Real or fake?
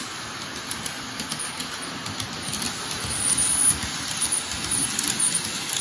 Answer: real